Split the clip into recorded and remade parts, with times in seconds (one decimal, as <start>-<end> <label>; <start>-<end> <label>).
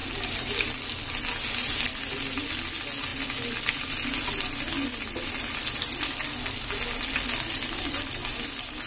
0.0-8.9 recorded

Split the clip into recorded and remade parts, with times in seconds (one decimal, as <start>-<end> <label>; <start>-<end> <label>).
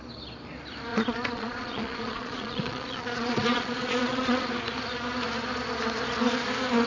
0.0-0.9 recorded; 0.9-4.5 remade; 4.5-6.9 recorded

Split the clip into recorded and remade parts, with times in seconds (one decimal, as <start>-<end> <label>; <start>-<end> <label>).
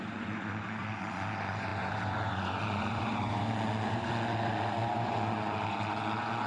0.0-6.5 remade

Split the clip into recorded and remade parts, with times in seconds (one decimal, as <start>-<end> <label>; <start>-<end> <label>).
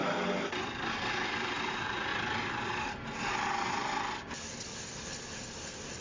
0.0-1.7 recorded; 1.7-2.1 remade; 2.1-6.0 recorded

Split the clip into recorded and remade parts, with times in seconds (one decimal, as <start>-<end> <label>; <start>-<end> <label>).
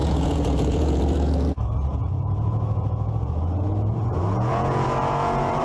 0.0-1.3 remade; 1.3-1.9 recorded; 1.9-5.6 remade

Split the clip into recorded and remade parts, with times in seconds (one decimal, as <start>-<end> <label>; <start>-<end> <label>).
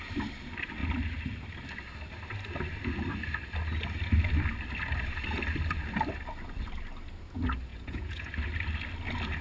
0.0-7.7 recorded; 7.7-8.3 remade; 8.3-9.4 recorded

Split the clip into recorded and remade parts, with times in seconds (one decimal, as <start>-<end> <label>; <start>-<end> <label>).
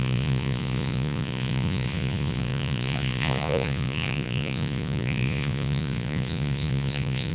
0.0-7.3 remade